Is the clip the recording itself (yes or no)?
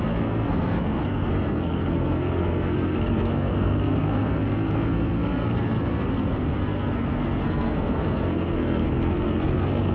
no